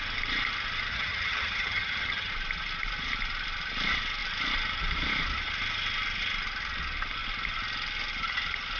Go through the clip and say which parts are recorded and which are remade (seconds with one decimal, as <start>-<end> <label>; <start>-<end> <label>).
0.0-0.9 recorded; 0.9-2.3 remade; 2.3-8.8 recorded